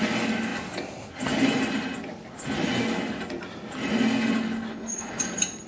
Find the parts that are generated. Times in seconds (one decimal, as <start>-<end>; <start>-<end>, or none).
4.7-5.2